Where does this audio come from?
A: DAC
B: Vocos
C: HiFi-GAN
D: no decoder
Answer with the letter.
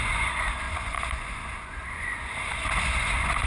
B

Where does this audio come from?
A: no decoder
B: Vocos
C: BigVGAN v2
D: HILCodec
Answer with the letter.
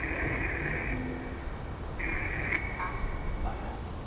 A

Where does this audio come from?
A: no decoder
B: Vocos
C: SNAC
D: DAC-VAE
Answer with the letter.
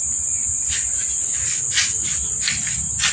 A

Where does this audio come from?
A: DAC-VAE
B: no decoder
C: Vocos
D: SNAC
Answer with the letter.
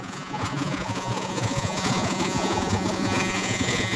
C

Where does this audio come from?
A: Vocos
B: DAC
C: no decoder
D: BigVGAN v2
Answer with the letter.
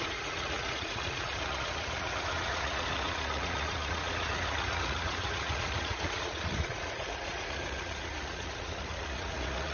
A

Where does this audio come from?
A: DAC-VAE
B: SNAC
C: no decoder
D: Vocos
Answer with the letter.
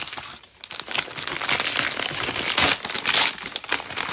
C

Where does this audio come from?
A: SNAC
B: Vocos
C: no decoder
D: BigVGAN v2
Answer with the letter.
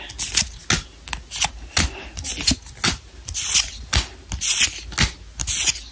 C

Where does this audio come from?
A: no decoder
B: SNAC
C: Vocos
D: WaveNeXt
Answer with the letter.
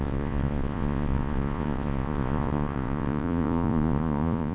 C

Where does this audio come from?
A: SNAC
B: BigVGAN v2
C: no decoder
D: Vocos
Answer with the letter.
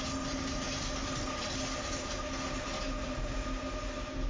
C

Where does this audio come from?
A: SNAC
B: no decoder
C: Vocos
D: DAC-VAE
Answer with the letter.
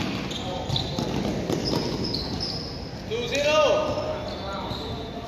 B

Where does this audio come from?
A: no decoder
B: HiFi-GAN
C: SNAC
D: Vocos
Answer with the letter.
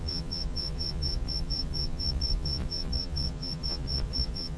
D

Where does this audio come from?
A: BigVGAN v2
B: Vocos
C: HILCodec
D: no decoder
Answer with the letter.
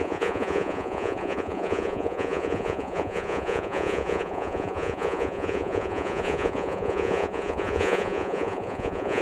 B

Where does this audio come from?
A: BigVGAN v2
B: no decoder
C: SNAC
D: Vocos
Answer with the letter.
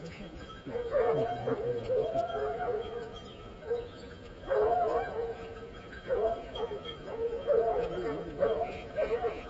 D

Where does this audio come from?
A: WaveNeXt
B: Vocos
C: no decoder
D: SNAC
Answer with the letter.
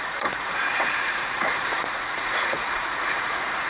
B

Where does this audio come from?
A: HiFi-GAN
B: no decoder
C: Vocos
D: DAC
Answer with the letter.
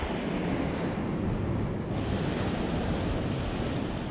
B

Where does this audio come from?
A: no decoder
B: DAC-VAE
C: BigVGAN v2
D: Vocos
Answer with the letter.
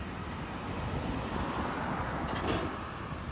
A